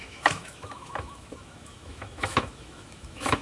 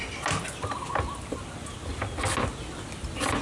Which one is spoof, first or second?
first